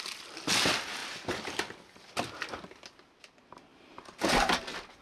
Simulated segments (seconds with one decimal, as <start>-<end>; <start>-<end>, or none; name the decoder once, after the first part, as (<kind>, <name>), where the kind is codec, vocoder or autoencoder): 3.7-4.6 (vocoder, BigVGAN v2)